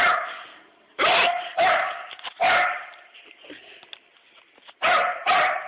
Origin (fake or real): real